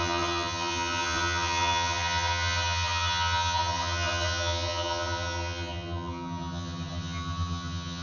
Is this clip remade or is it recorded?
remade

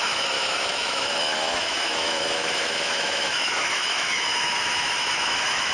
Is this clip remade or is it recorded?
remade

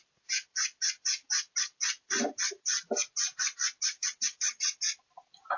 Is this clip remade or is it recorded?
recorded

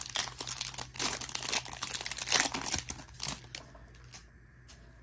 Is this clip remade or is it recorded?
recorded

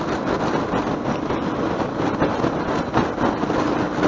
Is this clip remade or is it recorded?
recorded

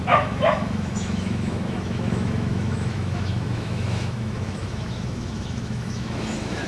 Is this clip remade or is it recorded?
remade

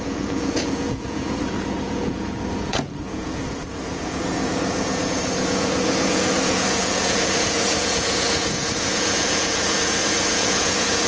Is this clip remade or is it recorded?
remade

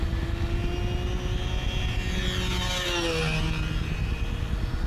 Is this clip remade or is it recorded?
recorded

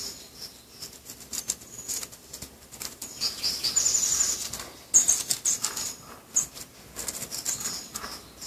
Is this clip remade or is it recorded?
recorded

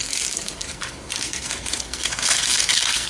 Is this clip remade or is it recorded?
remade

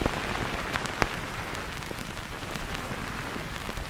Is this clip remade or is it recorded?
recorded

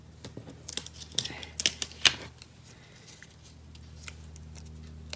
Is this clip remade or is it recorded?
recorded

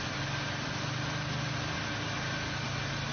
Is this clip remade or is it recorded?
recorded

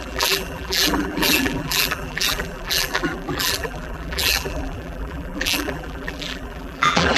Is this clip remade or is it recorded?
remade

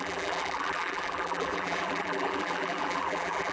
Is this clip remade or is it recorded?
remade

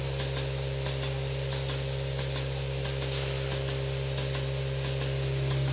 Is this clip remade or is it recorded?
recorded